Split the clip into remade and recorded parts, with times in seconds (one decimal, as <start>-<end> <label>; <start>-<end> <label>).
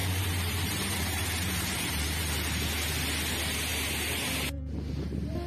0.0-2.3 remade; 2.3-5.5 recorded